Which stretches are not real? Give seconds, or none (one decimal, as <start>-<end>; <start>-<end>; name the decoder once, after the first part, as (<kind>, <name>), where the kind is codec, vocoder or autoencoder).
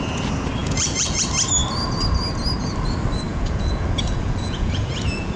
0.6-1.2 (vocoder, Vocos); 3.3-5.4